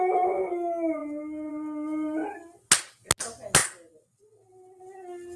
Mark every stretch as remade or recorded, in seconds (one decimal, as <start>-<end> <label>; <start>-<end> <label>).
0.0-5.4 recorded